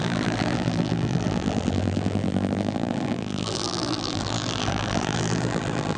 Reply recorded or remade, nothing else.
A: remade